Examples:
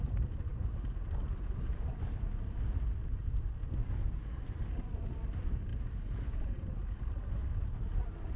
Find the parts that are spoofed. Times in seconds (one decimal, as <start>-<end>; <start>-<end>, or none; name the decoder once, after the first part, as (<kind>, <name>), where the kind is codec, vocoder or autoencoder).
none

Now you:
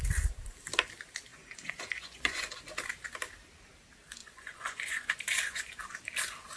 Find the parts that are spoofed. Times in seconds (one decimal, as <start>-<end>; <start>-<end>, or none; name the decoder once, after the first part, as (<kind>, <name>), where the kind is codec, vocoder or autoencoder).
1.3-2.5 (vocoder, Vocos); 4.2-5.7

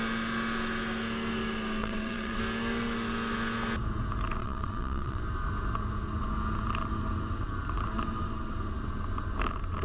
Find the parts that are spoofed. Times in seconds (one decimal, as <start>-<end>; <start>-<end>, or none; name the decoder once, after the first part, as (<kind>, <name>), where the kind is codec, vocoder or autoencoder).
1.8-2.4 (vocoder, WaveNeXt); 4.4-5.2

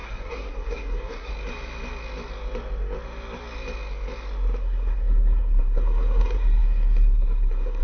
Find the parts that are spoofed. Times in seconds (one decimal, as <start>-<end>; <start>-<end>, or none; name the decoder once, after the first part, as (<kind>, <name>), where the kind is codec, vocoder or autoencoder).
0.0-1.3 (codec, SNAC); 4.6-7.8

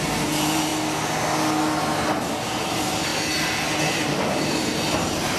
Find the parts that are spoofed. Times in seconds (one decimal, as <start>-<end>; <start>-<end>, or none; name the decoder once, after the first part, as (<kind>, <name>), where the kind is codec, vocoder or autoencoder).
0.0-0.7 (vocoder, BigVGAN v2); 2.6-3.1; 3.9-5.4

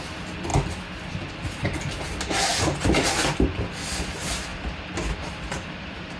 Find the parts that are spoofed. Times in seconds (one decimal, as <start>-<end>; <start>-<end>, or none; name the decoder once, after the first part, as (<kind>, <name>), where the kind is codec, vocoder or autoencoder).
none

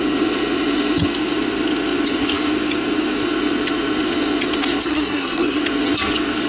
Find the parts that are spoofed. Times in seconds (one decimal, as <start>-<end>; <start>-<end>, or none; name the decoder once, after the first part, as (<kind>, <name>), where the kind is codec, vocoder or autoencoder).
4.8-5.6 (codec, SNAC)

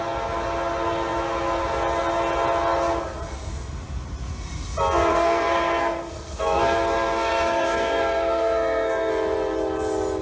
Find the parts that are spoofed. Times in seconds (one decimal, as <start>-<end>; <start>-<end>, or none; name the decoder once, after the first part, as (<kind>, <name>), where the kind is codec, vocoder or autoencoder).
5.1-9.1 (codec, SNAC)